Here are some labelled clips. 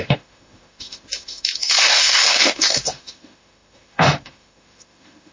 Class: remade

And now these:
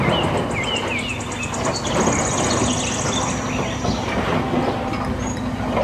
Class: recorded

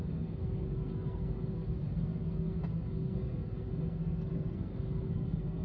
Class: remade